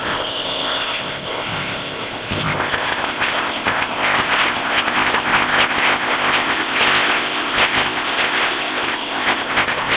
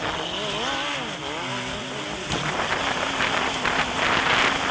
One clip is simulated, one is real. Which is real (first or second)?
second